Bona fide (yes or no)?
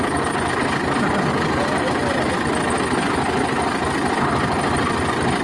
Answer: yes